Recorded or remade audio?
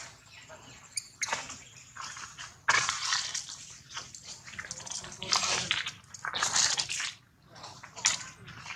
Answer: recorded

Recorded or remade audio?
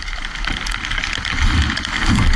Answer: recorded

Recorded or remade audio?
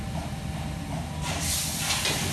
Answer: recorded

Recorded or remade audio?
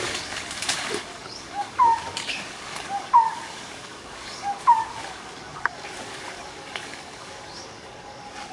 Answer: remade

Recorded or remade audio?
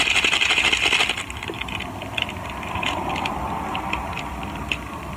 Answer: remade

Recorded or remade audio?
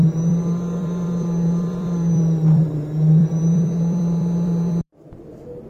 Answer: remade